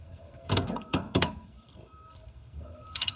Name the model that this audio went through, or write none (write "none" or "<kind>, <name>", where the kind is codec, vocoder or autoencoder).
codec, SNAC